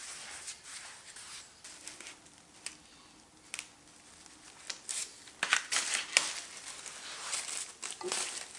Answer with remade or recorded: recorded